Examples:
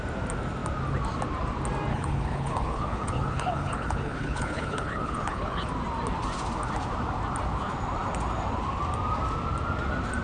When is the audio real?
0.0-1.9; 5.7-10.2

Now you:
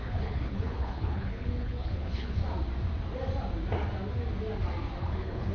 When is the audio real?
2.4-5.0

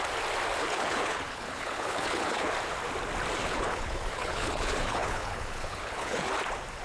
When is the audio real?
0.0-0.6; 2.5-3.4; 6.3-6.8

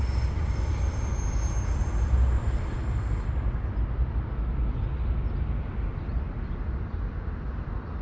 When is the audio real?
0.0-8.0

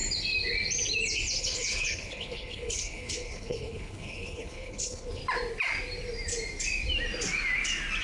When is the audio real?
0.0-1.4; 5.2-8.0

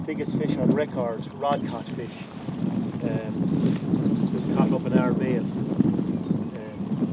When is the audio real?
0.0-7.1

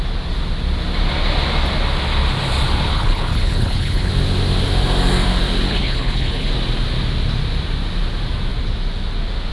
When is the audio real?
0.0-2.9; 4.1-5.7; 6.5-9.5